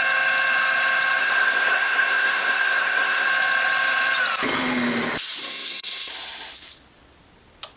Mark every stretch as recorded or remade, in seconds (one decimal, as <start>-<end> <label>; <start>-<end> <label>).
0.0-1.2 recorded; 1.2-3.3 remade; 3.3-5.4 recorded; 5.4-6.1 remade; 6.1-7.8 recorded